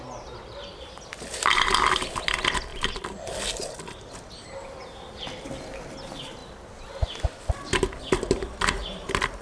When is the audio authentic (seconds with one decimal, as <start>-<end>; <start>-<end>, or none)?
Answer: 0.0-2.7; 3.7-9.4